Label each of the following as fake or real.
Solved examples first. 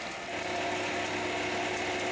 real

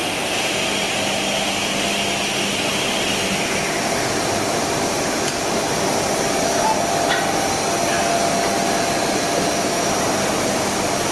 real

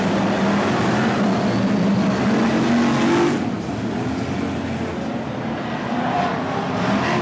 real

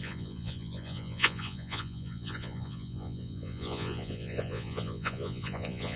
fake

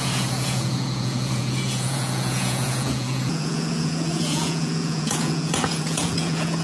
fake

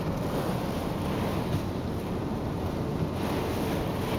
real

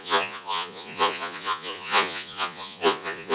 fake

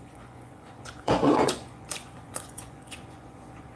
fake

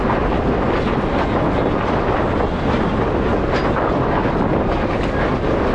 real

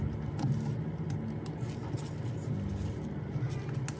real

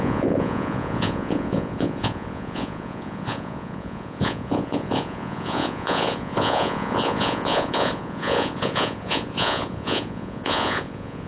fake